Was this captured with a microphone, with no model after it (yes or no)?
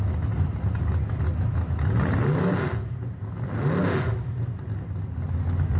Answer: yes